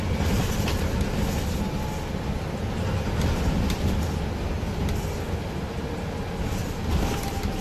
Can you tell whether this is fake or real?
real